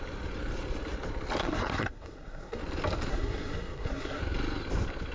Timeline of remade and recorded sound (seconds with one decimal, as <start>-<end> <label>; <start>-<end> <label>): 0.0-1.4 recorded; 1.4-2.6 remade; 2.6-3.1 recorded; 3.1-4.2 remade; 4.2-5.1 recorded